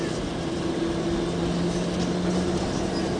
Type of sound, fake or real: real